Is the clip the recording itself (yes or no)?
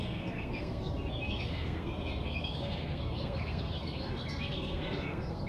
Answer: no